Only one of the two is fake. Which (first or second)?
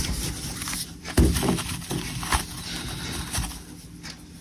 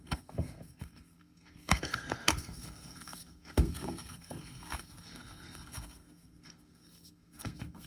second